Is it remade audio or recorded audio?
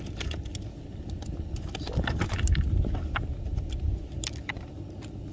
recorded